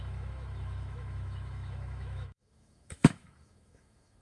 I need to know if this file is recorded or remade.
remade